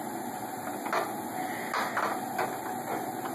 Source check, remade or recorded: recorded